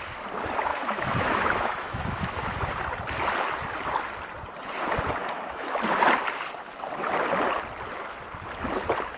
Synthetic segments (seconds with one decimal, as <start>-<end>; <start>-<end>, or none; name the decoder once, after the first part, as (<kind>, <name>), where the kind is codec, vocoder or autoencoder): 0.7-2.7 (autoencoder, DAC-VAE); 5.2-5.8